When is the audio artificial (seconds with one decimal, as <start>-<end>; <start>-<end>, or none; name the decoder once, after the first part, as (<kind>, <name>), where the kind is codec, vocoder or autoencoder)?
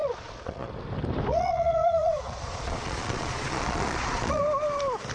0.0-0.7 (vocoder, Vocos); 1.3-4.4